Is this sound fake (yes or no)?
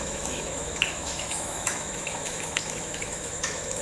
yes